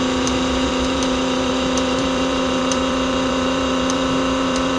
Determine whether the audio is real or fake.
fake